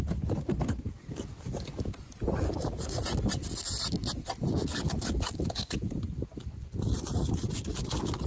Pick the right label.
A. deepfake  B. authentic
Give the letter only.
A